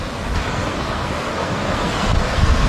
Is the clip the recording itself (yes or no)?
no